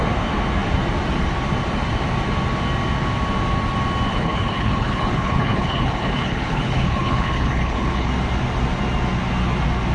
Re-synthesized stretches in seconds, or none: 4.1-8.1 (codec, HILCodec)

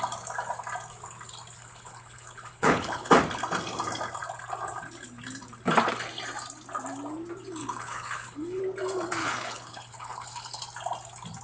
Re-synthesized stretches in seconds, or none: 1.6-3.1 (codec, HILCodec); 7.6-8.6; 9.2-10.6